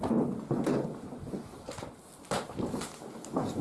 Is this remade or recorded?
recorded